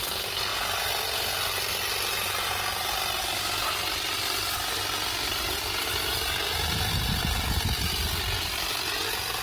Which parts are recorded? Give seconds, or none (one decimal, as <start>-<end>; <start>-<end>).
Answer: 0.0-9.4